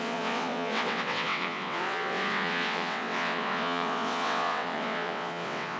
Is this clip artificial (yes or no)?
yes